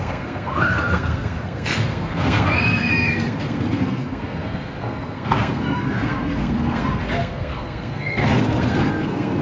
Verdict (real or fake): fake